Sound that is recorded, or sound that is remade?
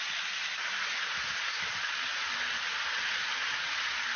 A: recorded